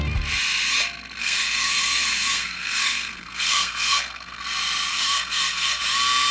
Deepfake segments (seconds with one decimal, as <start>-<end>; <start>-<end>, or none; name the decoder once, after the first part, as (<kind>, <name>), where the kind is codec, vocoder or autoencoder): 1.2-4.4 (codec, SNAC); 4.9-5.8